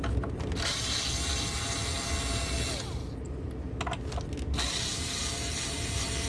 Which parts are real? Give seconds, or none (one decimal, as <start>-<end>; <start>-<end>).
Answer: 0.0-6.3